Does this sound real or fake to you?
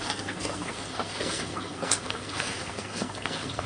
fake